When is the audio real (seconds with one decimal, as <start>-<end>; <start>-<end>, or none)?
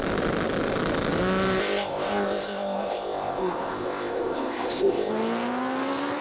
0.0-1.6; 5.1-6.2